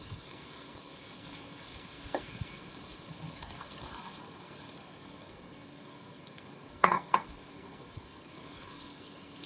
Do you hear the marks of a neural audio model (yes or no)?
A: yes